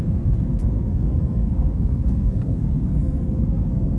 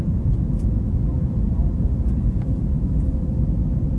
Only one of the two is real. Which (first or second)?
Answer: second